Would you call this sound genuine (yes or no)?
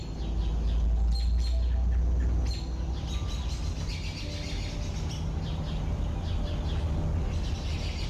yes